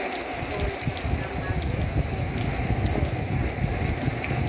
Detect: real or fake real